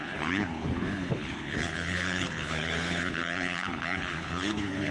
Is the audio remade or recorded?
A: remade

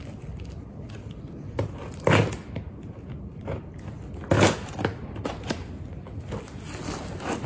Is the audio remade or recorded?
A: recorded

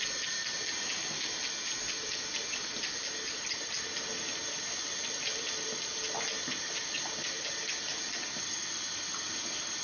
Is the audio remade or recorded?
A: recorded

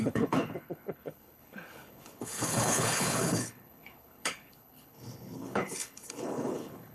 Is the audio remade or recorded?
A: remade